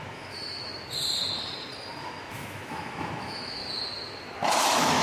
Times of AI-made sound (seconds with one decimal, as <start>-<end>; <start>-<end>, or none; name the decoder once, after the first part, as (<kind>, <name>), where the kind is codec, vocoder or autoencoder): 0.0-0.7 (autoencoder, DAC-VAE); 2.0-3.6; 4.6-5.0